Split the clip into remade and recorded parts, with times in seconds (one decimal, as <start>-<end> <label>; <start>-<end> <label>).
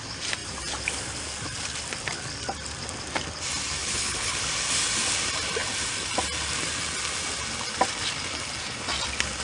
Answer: 0.0-3.8 recorded; 3.8-4.4 remade; 4.4-9.4 recorded